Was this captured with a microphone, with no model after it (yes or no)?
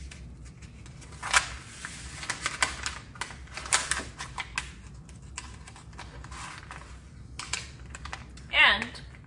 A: yes